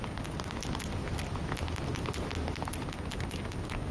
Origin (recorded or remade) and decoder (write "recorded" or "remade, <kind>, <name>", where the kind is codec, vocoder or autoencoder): recorded